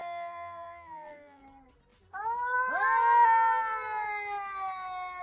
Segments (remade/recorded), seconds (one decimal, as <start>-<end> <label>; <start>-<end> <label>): 0.0-1.4 remade; 1.4-5.2 recorded